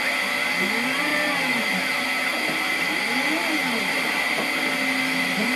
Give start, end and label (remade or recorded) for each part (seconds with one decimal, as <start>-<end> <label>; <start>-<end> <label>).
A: 0.0-5.6 recorded